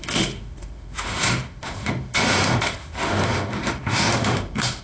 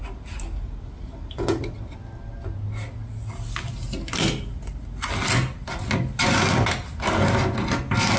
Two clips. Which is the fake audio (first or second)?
first